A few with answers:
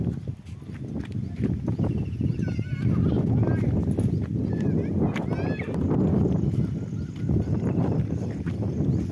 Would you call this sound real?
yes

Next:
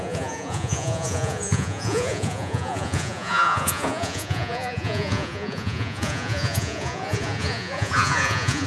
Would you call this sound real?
no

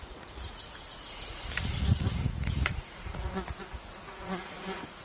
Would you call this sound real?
no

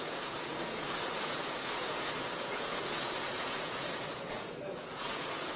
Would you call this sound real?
no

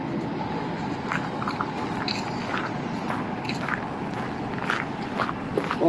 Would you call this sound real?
yes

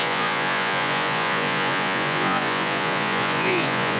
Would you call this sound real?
no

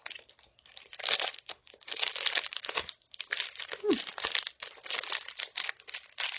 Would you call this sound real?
yes